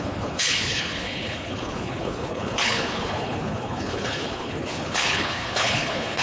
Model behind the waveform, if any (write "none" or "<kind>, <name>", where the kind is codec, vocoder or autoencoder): codec, HILCodec